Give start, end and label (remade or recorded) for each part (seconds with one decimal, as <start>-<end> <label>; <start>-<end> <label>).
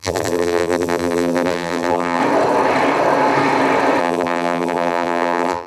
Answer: 0.0-2.2 remade; 2.2-4.0 recorded; 4.0-5.7 remade